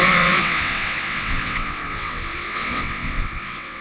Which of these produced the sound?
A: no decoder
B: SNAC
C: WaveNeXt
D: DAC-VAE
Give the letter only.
C